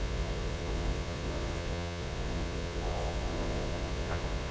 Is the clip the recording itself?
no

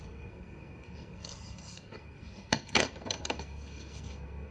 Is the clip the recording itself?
no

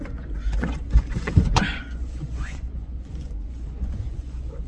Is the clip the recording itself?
no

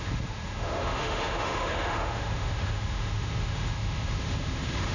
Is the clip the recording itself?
no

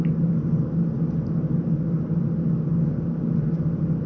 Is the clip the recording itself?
yes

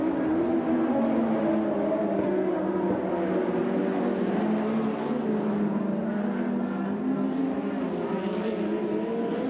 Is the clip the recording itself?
yes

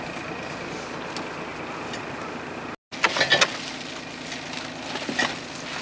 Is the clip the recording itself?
yes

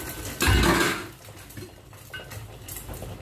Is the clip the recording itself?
yes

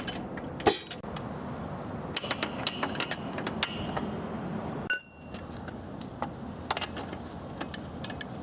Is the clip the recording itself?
yes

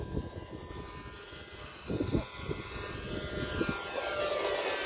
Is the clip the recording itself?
yes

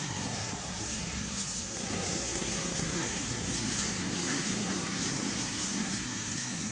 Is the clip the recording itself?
no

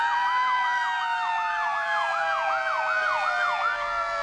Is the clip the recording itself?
no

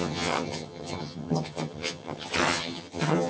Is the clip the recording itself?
no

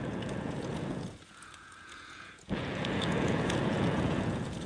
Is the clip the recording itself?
no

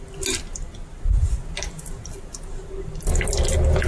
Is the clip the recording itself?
yes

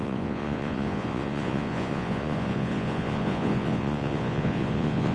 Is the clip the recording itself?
no